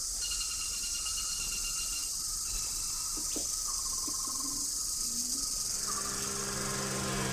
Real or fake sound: real